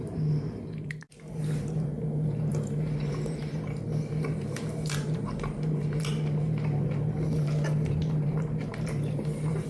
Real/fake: fake